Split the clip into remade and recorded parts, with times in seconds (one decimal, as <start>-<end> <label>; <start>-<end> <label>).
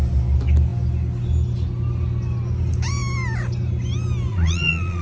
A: 0.0-4.3 recorded; 4.3-5.0 remade